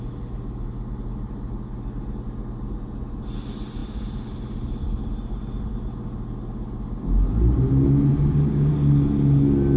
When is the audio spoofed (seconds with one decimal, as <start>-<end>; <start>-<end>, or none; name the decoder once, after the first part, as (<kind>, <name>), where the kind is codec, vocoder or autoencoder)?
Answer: 8.1-8.7 (codec, DAC)